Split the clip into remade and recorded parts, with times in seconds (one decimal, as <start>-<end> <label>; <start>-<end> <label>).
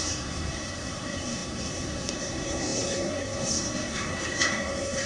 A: 0.0-5.1 remade